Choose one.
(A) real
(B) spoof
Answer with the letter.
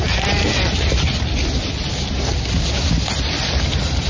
A